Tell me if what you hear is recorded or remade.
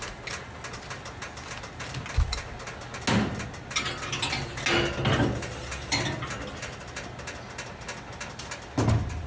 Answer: recorded